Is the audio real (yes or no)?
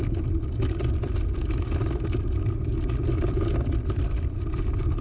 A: no